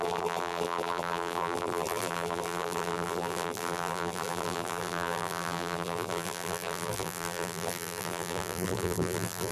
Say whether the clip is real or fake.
fake